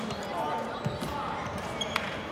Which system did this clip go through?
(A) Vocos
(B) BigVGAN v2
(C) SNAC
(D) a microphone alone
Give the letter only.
D